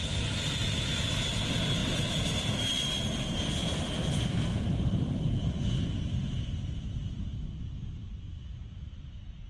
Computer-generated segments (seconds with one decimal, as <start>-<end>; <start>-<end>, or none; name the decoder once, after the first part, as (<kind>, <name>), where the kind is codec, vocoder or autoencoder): 0.0-1.1 (vocoder, BigVGAN v2); 1.8-2.6; 4.5-8.6